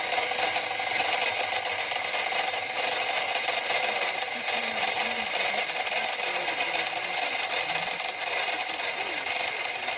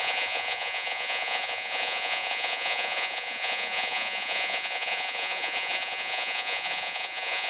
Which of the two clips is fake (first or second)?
second